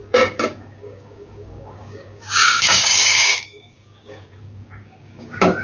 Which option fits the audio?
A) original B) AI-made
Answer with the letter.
B